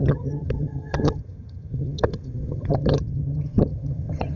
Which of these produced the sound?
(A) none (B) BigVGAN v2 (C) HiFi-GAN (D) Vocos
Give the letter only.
C